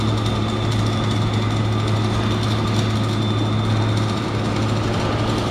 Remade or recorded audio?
recorded